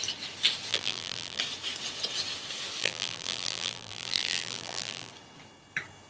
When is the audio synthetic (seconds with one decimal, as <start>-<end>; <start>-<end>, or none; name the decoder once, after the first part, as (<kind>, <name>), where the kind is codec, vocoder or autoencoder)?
0.7-1.4 (vocoder, BigVGAN v2); 2.8-5.1